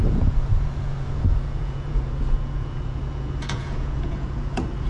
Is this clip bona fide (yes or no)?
no